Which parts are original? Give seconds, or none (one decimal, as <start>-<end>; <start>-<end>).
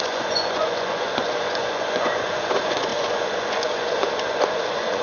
none